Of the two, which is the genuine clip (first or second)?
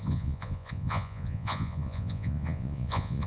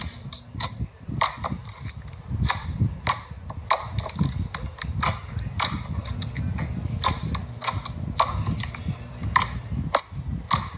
second